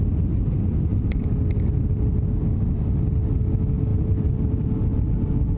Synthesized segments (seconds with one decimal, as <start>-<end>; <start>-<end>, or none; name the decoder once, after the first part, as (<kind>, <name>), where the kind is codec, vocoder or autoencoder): 3.9-4.7 (vocoder, BigVGAN v2)